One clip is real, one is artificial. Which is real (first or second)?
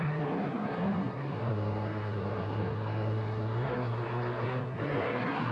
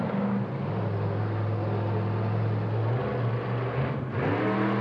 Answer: second